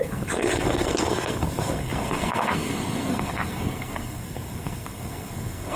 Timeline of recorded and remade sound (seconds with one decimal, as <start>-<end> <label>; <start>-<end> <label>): 0.0-5.8 remade